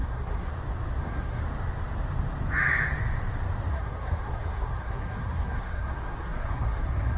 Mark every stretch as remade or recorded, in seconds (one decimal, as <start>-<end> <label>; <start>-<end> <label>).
0.0-0.5 remade; 0.5-1.0 recorded; 1.0-1.4 remade; 1.4-3.7 recorded; 3.7-7.2 remade